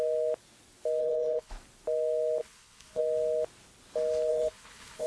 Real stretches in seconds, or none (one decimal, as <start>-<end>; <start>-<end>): 0.0-1.0; 1.5-2.4; 3.0-4.3